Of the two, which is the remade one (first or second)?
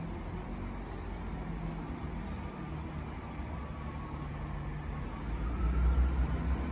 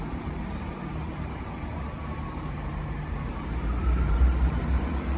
second